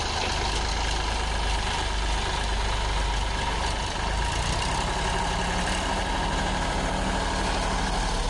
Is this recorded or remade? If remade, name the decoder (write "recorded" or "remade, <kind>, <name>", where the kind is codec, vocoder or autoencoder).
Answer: recorded